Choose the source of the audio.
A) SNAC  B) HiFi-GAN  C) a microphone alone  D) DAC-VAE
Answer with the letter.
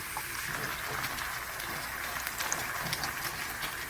C